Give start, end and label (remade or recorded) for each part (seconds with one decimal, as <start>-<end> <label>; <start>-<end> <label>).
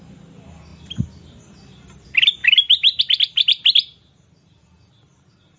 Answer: 0.0-5.6 recorded